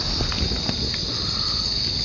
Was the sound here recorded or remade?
recorded